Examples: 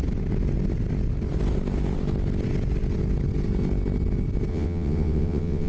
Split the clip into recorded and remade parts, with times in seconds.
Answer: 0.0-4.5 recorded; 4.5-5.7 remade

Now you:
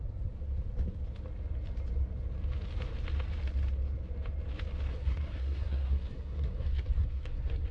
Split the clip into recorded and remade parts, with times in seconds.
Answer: 0.0-4.9 recorded; 4.9-7.7 remade

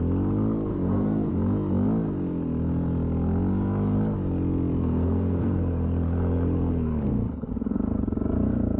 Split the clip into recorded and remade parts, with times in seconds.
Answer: 0.0-0.7 recorded; 0.7-1.3 remade; 1.3-4.8 recorded; 4.8-7.5 remade; 7.5-8.8 recorded

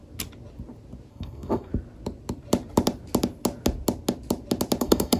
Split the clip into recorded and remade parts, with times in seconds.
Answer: 0.0-1.1 recorded; 1.1-1.7 remade; 1.7-4.8 recorded; 4.8-5.2 remade